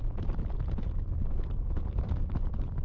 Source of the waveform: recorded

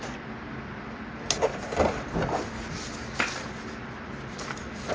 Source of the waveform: recorded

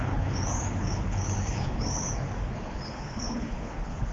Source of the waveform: remade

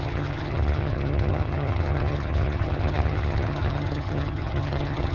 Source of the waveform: remade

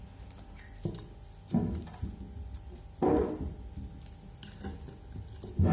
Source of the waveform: recorded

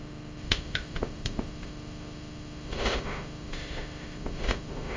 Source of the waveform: remade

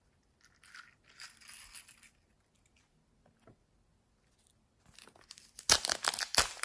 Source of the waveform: recorded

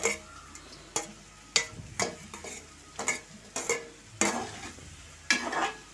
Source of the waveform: recorded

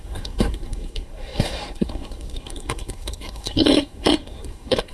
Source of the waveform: remade